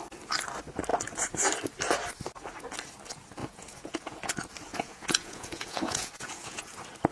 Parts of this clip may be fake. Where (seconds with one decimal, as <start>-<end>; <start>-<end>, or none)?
3.4-4.2; 4.7-6.6

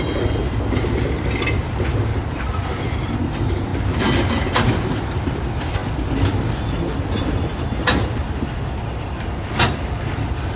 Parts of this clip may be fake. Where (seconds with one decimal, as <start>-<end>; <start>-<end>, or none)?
none

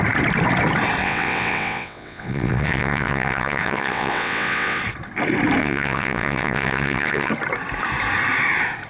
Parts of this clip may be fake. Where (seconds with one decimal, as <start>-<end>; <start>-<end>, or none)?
1.0-4.8; 5.6-7.3

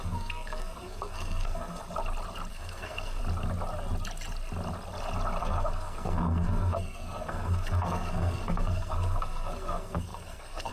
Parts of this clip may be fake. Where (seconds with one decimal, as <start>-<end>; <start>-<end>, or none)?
0.0-1.8; 2.5-3.2; 5.4-10.7

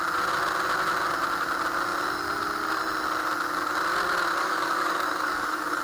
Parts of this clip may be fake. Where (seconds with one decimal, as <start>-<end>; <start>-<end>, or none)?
4.4-5.8